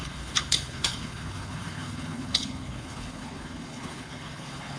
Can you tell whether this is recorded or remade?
remade